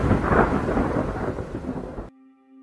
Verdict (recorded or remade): recorded